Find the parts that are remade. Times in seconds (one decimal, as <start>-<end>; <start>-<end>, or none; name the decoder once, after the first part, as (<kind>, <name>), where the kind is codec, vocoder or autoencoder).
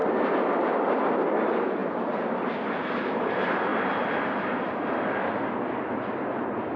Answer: none